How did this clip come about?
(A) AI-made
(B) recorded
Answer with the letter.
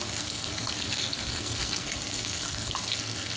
A